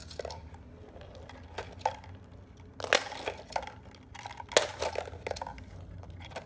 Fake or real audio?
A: real